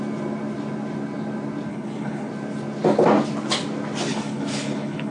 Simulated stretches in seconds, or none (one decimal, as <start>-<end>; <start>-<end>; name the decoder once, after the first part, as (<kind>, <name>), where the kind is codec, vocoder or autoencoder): 1.7-2.3 (codec, HILCodec); 4.1-5.1